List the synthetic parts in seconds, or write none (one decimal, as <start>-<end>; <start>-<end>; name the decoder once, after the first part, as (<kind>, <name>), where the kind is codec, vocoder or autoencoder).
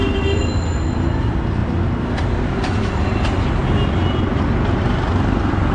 none